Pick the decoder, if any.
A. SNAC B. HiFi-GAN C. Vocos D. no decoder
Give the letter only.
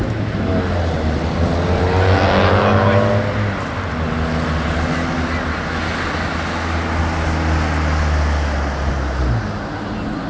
D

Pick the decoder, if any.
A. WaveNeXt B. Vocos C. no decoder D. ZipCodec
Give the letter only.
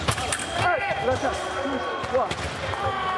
C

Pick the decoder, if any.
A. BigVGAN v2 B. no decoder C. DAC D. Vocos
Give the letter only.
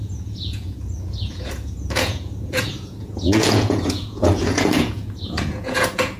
D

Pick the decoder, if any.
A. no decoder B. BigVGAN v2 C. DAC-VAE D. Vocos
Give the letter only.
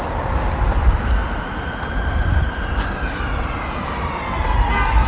A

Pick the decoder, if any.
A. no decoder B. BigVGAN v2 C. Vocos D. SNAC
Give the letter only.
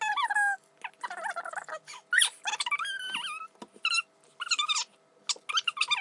A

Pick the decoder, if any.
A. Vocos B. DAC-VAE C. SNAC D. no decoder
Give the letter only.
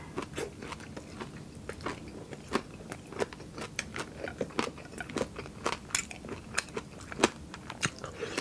D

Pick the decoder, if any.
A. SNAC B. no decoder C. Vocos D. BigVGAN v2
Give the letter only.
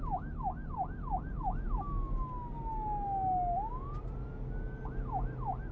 B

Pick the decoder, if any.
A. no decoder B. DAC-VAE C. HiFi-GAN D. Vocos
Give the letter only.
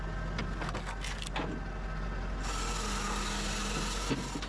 A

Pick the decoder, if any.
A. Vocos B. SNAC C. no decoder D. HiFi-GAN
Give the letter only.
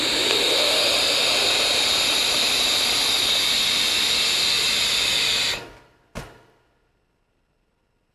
C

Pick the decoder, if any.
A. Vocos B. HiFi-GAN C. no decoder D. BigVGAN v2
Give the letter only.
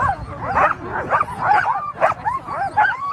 A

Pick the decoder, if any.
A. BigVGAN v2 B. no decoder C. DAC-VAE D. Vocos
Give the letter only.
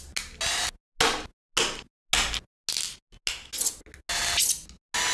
B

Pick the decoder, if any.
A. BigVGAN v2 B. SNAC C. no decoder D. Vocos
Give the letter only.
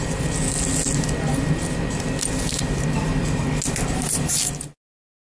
C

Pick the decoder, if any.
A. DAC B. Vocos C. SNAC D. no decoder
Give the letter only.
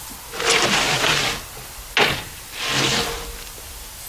D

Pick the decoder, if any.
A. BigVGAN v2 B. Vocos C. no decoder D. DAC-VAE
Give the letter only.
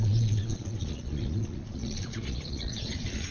B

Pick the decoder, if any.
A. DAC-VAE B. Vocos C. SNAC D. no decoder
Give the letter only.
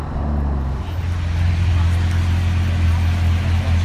D